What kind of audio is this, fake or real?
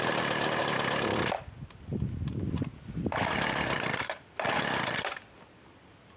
fake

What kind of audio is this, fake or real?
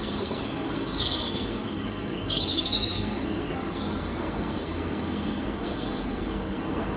fake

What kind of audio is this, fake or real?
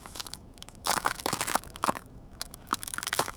fake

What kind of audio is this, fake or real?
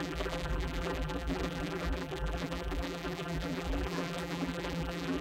fake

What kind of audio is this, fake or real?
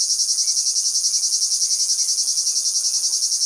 real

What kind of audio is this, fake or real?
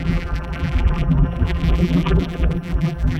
fake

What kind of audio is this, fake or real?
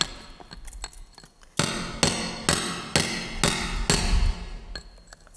real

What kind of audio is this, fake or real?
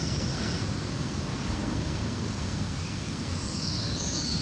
fake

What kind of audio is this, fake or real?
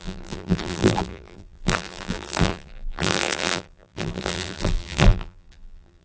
fake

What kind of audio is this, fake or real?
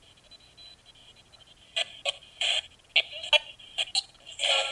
real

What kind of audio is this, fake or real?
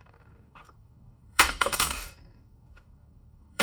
fake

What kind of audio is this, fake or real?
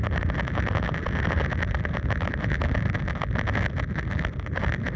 real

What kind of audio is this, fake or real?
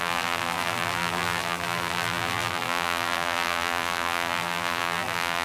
fake